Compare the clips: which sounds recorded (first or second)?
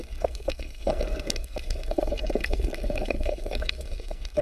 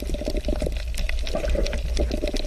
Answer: second